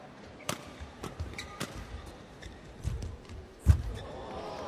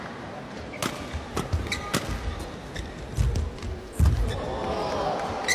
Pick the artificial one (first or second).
first